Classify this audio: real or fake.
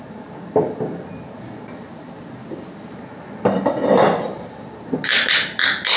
real